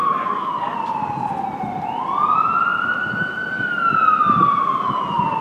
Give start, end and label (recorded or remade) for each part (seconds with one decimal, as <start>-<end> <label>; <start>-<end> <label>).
0.0-4.4 recorded; 4.4-5.0 remade; 5.0-5.4 recorded